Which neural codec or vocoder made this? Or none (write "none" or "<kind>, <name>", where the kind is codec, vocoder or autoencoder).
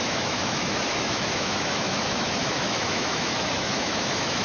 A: autoencoder, DAC-VAE